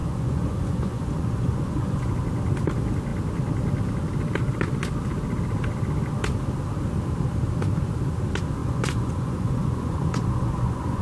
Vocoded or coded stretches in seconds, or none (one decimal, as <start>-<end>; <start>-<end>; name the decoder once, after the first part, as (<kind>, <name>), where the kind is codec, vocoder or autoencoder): 0.0-2.1 (vocoder, Vocos); 8.6-11.0